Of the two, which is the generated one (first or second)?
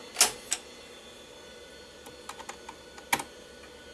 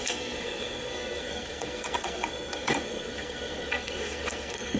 second